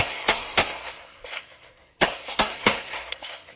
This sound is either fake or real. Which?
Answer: fake